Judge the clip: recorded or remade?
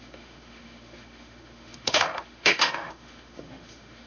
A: remade